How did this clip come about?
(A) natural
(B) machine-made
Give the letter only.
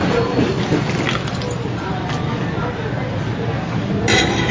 A